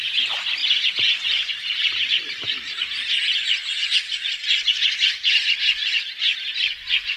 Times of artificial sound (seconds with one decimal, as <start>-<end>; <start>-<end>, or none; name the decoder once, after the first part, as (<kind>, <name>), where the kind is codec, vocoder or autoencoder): 0.6-1.5 (vocoder, BigVGAN v2); 3.8-5.1; 5.8-6.7